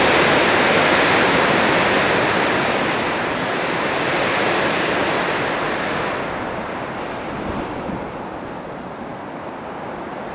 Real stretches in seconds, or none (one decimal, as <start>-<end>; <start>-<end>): 0.0-10.3

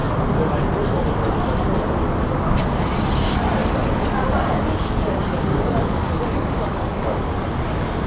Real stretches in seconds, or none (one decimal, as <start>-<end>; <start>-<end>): 0.0-3.6; 7.3-8.1

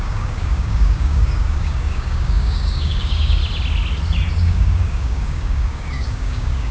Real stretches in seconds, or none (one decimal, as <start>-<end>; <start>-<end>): 3.4-4.3